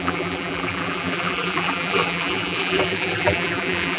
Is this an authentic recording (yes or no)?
no